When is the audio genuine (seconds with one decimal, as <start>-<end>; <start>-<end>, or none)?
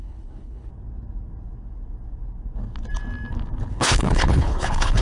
0.7-3.7